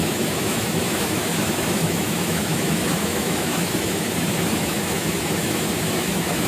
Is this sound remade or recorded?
remade